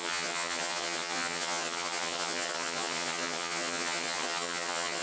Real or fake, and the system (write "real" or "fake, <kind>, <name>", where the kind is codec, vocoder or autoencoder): fake, vocoder, HiFi-GAN